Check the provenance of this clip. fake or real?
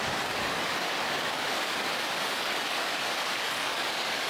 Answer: fake